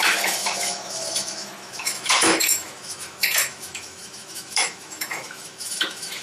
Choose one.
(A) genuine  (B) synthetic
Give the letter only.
B